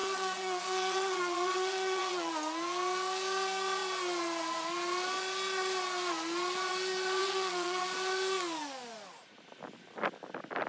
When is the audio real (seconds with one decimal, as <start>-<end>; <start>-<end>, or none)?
2.3-7.2; 7.8-10.7